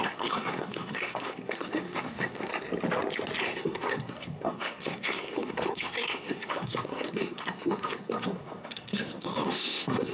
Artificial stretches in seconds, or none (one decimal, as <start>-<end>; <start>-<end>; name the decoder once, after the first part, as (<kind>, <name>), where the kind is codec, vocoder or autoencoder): 0.0-2.5 (codec, SNAC); 3.4-10.1